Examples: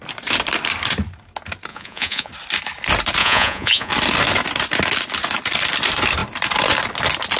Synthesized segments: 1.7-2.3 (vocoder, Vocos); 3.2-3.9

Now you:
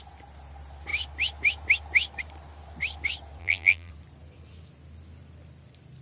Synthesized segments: 3.4-3.9 (vocoder, BigVGAN v2)

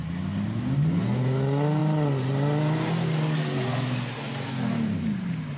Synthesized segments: none